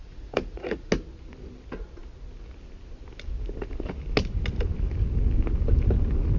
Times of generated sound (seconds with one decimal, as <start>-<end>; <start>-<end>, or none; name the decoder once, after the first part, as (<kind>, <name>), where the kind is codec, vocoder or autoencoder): 0.0-0.9 (vocoder, Vocos)